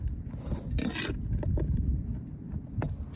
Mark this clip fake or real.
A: real